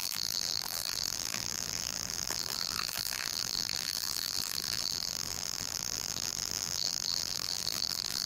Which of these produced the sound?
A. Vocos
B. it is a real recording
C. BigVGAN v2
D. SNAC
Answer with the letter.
C